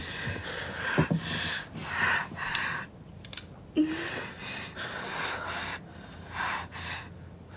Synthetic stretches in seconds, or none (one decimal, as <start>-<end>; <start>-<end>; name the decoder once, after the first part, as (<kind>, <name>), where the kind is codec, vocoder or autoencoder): none